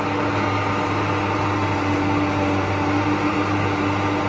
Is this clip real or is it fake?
real